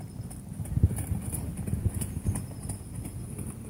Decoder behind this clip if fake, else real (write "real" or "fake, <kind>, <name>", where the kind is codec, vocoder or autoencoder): real